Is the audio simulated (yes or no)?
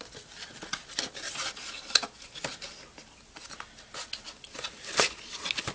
no